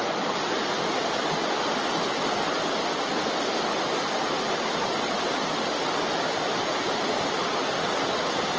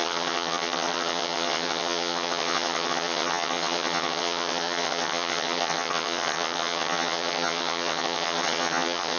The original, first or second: first